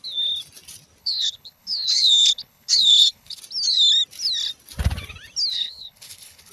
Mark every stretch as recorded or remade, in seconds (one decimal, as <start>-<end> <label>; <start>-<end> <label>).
0.0-1.0 recorded; 1.0-3.4 remade; 3.4-5.5 recorded; 5.5-6.5 remade